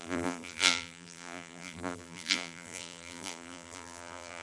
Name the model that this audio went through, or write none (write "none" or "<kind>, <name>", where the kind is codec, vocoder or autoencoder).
vocoder, BigVGAN v2